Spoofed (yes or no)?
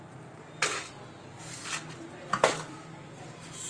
no